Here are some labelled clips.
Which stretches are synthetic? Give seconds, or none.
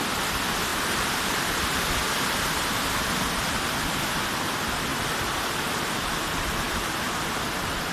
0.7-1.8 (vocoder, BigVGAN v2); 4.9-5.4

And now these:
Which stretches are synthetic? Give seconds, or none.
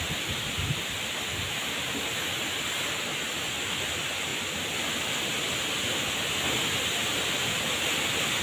4.3-5.2 (vocoder, BigVGAN v2)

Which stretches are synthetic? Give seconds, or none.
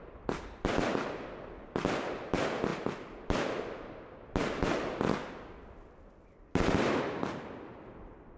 none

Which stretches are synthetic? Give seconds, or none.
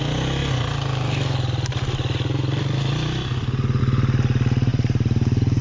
4.7-5.6 (vocoder, BigVGAN v2)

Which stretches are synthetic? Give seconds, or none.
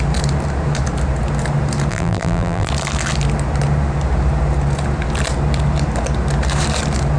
1.9-2.7 (vocoder, BigVGAN v2)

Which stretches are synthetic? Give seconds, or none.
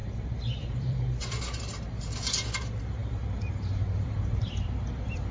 0.0-5.3 (vocoder, BigVGAN v2)